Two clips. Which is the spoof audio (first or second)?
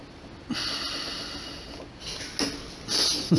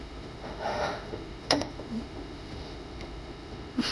second